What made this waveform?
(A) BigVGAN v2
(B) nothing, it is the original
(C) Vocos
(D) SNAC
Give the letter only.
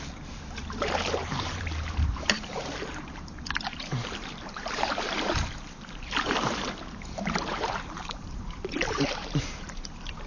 A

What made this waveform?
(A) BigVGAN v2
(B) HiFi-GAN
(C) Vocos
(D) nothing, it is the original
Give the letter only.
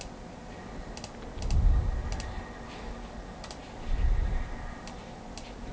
D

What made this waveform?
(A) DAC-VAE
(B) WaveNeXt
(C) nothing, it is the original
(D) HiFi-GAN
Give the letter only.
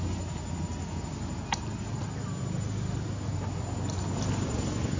C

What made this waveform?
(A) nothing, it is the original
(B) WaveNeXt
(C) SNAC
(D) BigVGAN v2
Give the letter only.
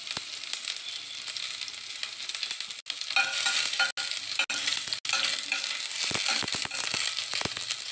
A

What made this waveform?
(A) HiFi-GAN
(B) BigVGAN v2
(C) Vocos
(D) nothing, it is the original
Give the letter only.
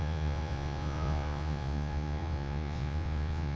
C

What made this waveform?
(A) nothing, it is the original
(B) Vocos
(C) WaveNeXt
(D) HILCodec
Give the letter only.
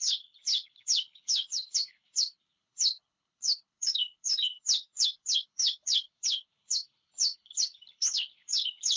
D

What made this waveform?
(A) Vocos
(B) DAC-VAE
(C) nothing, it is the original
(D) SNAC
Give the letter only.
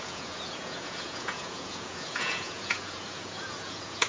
A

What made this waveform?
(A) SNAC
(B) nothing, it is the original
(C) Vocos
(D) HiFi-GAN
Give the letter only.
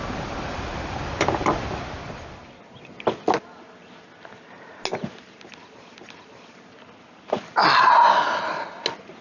B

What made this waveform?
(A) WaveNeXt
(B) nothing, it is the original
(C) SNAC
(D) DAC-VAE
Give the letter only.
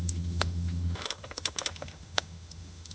D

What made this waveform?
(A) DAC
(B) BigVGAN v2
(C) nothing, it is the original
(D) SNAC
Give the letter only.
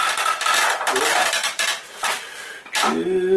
C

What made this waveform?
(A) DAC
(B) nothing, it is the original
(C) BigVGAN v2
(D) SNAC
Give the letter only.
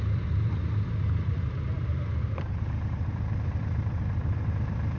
C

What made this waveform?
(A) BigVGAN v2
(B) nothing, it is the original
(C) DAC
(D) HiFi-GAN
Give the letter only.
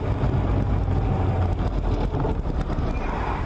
B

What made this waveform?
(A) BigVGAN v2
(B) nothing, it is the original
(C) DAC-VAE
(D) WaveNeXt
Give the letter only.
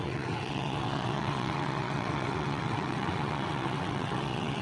D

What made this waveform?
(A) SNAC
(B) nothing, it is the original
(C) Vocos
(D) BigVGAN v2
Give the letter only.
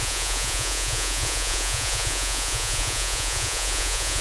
C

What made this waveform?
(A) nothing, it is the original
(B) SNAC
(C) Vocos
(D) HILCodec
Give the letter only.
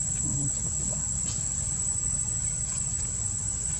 C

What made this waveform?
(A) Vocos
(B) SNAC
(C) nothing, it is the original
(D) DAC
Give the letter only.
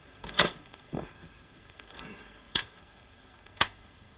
B